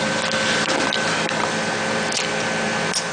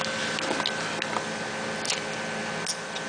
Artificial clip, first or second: first